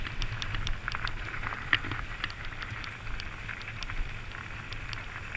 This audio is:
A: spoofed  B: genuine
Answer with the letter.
B